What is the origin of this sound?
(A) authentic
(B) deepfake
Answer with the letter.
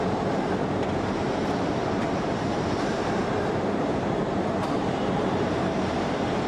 B